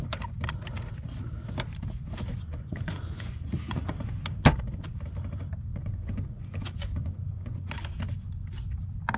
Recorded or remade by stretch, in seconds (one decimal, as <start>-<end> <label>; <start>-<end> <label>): 0.0-2.3 recorded; 2.3-4.1 remade; 4.1-5.7 recorded; 5.7-7.7 remade; 7.7-9.2 recorded